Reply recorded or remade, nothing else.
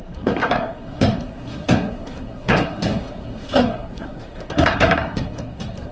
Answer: remade